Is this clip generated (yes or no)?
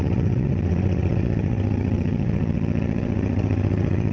yes